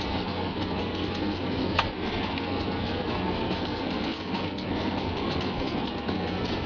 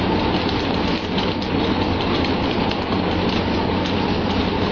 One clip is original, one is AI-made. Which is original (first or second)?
second